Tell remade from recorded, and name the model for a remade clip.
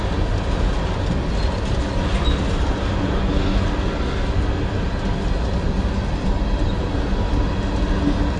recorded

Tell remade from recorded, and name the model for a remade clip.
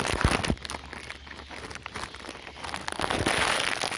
recorded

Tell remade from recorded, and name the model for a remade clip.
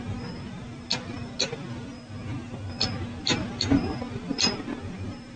recorded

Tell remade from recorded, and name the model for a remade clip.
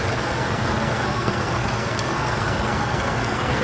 remade, codec, SNAC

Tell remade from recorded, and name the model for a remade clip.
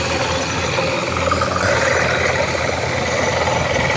recorded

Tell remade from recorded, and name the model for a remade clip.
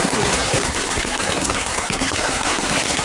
remade, codec, SNAC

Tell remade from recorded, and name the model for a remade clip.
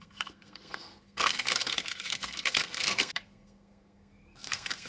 remade, codec, SNAC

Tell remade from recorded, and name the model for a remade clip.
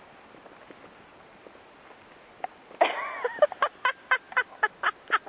recorded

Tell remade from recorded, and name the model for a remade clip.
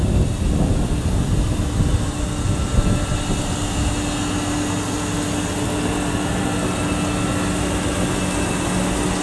recorded